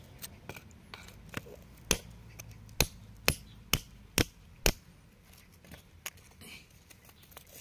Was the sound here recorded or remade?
recorded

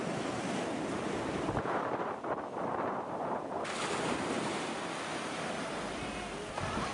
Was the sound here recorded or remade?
recorded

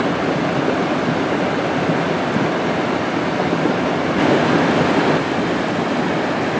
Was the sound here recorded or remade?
recorded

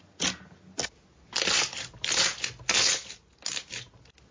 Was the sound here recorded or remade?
recorded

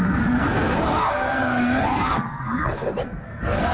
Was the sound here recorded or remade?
remade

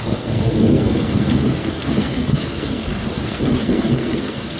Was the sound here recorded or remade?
remade